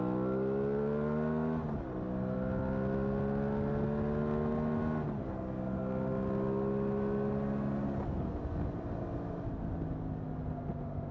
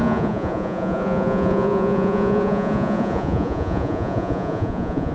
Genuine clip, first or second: first